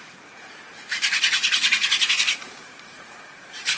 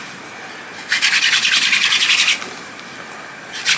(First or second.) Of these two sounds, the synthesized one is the first